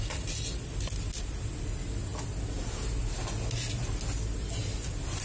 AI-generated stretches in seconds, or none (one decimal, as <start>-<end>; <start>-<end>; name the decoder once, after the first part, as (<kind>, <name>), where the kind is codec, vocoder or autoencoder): none